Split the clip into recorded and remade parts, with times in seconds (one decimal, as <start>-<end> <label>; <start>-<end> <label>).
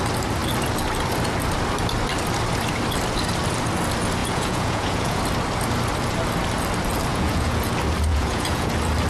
0.0-4.2 recorded; 4.2-5.2 remade; 5.2-7.1 recorded; 7.1-7.7 remade; 7.7-8.1 recorded; 8.1-8.7 remade; 8.7-9.1 recorded